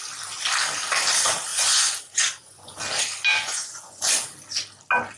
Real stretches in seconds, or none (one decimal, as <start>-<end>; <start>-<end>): 0.0-1.5; 2.8-3.3; 4.1-5.2